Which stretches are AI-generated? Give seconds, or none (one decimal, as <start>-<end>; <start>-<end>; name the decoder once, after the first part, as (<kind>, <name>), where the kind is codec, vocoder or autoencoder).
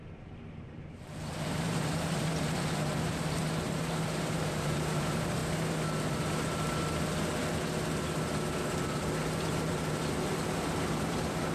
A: 0.0-5.4 (vocoder, BigVGAN v2); 9.5-11.5